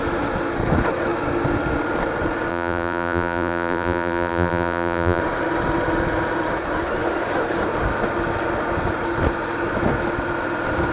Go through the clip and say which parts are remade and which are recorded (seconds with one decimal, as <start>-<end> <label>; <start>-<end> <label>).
0.0-2.5 recorded; 2.5-5.2 remade; 5.2-10.9 recorded